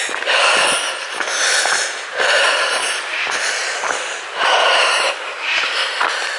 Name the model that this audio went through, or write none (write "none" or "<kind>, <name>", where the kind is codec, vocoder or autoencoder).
none